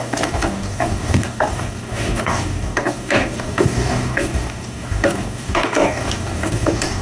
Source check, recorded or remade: remade